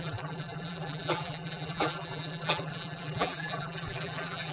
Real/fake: fake